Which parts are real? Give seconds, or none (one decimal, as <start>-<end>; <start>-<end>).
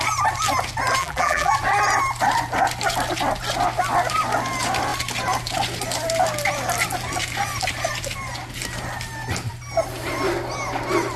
0.0-1.0; 1.5-11.2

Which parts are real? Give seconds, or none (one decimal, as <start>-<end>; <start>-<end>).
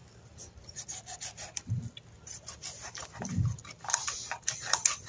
0.0-3.1; 3.6-5.1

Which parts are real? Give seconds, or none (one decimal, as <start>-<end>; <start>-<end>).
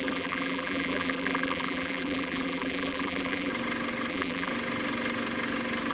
3.5-4.1; 4.5-5.9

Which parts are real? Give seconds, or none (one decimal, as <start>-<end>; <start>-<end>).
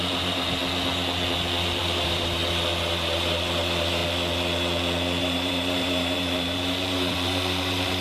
0.6-1.8; 2.4-2.9; 4.0-5.2